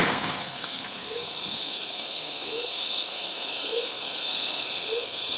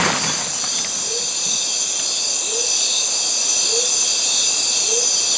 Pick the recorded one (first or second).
second